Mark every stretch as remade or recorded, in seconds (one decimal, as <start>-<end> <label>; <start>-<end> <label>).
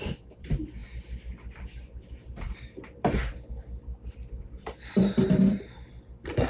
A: 0.0-6.5 remade